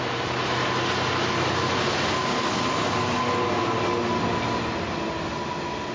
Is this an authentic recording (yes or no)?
yes